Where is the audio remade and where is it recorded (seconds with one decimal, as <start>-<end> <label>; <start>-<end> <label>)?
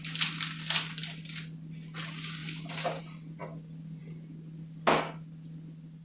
0.0-6.0 recorded